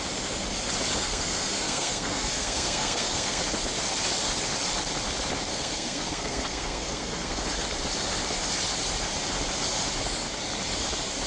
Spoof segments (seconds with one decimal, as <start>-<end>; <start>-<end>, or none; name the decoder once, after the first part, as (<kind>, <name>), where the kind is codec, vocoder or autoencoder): 1.0-3.4 (codec, SNAC); 5.5-7.4